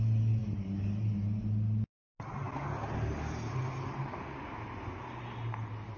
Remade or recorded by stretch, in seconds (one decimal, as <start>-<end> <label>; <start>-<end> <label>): 0.0-6.0 recorded